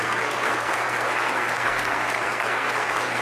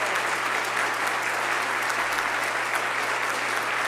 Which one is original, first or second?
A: second